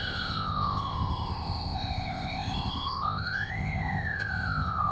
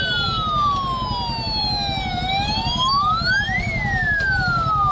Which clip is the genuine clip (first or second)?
second